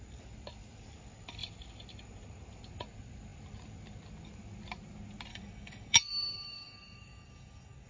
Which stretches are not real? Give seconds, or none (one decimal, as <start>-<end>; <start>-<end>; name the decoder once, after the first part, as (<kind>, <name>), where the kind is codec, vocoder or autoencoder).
5.3-7.9 (codec, DAC)